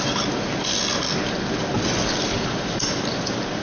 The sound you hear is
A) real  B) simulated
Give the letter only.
A